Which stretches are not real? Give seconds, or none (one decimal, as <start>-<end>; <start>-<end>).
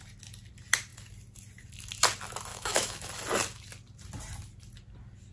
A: 2.5-3.1